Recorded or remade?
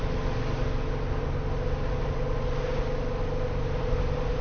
recorded